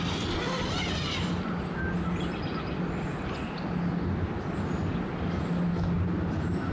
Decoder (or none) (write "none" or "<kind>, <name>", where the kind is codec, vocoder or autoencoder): none